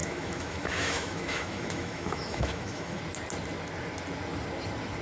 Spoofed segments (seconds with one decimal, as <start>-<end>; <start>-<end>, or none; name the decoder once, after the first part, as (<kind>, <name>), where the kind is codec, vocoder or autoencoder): 0.0-3.0 (autoencoder, DAC-VAE)